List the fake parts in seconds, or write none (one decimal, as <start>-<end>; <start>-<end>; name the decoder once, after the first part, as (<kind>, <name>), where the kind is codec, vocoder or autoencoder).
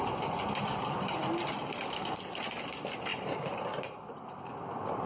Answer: 3.1-4.2 (vocoder, BigVGAN v2)